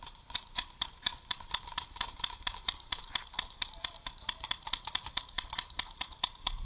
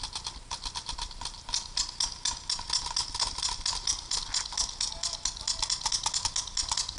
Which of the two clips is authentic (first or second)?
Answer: second